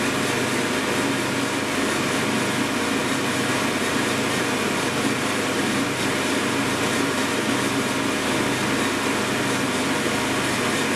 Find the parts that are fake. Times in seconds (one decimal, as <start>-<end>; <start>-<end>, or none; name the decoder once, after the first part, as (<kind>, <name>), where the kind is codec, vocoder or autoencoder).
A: 3.0-7.3 (vocoder, BigVGAN v2)